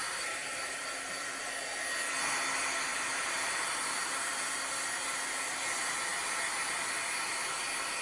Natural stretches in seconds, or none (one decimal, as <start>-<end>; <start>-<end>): 1.4-2.9; 4.3-8.0